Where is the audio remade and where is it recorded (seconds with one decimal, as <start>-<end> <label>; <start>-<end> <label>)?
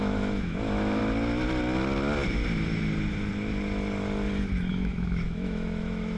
0.0-1.0 remade; 1.0-4.7 recorded; 4.7-6.2 remade